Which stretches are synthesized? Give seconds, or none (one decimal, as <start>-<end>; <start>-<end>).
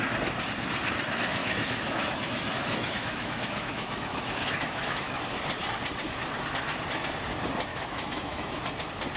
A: 1.4-5.2; 7.7-8.6